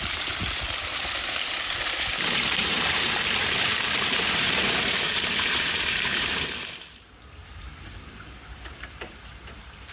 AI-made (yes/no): yes